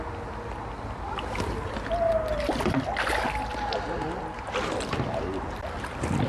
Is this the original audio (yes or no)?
yes